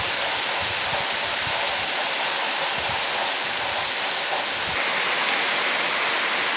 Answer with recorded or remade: recorded